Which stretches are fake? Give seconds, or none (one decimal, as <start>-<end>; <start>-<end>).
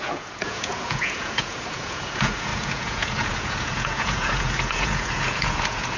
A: 0.0-6.0